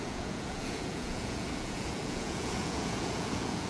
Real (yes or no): no